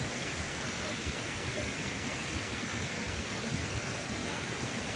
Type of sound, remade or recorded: remade